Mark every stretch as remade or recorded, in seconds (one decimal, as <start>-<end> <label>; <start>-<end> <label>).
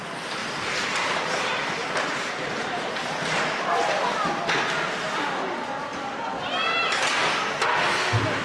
0.0-0.4 recorded; 0.4-3.7 remade; 3.7-8.4 recorded